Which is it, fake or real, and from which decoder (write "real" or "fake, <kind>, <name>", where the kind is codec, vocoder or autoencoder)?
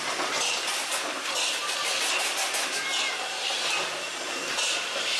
real